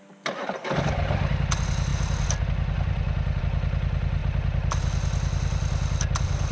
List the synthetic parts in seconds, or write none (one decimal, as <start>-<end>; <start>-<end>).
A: none

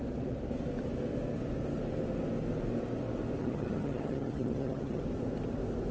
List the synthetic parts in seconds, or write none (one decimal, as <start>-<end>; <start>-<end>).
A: 3.4-5.0